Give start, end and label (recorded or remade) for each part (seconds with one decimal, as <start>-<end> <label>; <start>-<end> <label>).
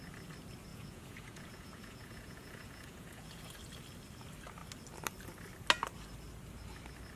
0.0-0.7 recorded; 0.7-3.6 remade; 3.6-7.2 recorded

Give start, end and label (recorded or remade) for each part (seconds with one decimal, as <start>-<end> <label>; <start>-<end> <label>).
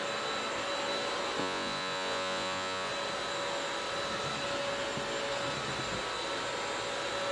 0.0-1.4 recorded; 1.4-2.9 remade; 2.9-7.3 recorded